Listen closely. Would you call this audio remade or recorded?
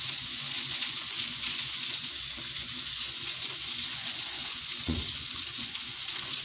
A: remade